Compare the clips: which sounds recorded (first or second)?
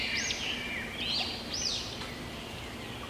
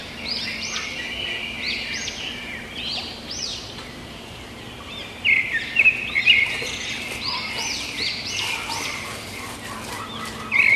first